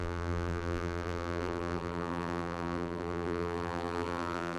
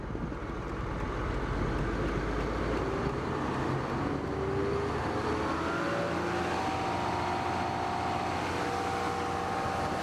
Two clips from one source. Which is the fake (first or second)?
first